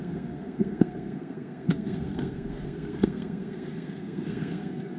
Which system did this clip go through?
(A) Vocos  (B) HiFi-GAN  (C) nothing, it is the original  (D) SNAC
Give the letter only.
D